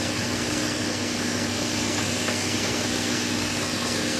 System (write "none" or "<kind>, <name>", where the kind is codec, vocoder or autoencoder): codec, SNAC